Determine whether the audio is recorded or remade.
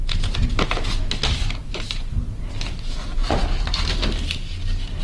recorded